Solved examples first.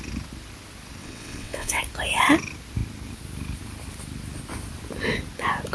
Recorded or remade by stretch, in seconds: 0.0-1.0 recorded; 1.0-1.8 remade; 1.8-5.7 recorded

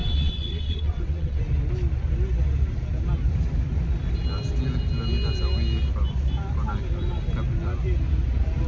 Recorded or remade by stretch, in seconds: 0.0-1.4 remade; 1.4-8.7 recorded

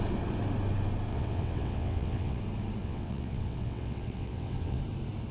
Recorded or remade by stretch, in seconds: 0.0-1.1 recorded; 1.1-2.4 remade; 2.4-2.8 recorded; 2.8-4.8 remade; 4.8-5.3 recorded

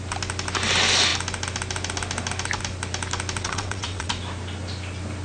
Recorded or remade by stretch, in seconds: 0.0-3.4 recorded; 3.4-4.1 remade; 4.1-5.2 recorded